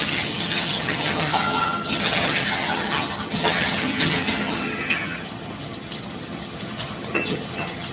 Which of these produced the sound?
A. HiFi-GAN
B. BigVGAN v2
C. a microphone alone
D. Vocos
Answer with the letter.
A